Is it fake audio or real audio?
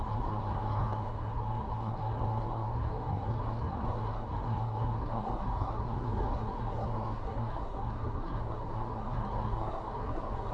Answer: fake